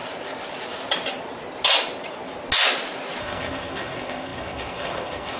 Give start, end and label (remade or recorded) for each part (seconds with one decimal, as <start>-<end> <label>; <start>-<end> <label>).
0.0-3.2 recorded; 3.2-5.4 remade